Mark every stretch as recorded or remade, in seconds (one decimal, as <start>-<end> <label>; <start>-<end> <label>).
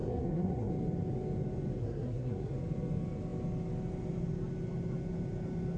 0.0-0.7 remade; 0.7-1.8 recorded; 1.8-2.5 remade; 2.5-5.8 recorded